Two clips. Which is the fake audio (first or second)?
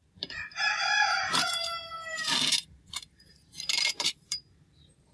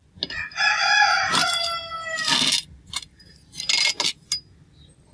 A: first